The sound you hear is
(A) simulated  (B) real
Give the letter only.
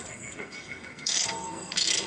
A